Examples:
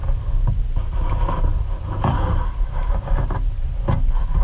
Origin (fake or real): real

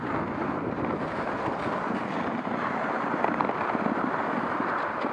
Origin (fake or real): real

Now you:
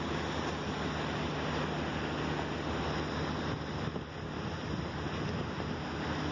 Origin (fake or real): real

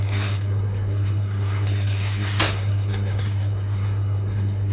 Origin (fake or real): fake